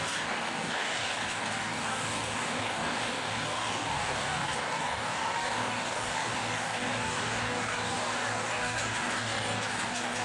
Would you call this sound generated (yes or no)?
yes